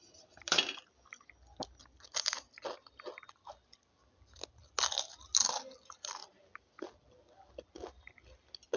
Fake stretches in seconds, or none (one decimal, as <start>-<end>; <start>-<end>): none

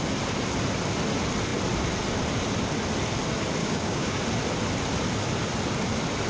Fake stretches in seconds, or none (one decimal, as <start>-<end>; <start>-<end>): 3.6-4.2

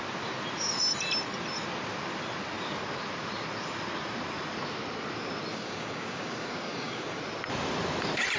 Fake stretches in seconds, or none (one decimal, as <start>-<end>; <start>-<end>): 5.5-7.2

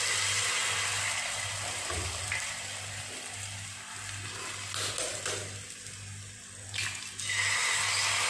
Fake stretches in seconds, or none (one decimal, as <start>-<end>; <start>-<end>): none

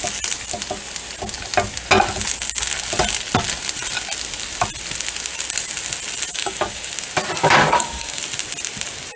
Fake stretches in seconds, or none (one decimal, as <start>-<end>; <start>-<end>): 6.3-6.9; 7.4-8.2

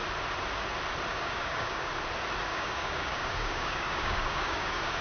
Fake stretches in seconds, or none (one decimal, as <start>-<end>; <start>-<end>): 1.1-1.9; 2.5-5.0

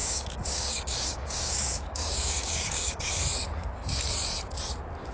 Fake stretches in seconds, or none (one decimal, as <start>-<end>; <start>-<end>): 0.0-3.1